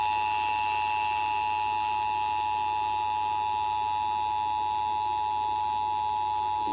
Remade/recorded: recorded